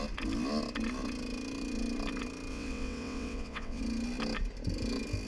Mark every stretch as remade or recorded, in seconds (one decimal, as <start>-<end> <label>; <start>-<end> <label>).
0.0-2.5 recorded; 2.5-3.8 remade; 3.8-5.3 recorded